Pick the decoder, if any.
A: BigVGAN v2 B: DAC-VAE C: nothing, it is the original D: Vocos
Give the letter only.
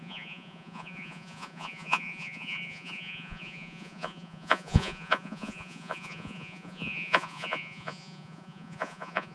D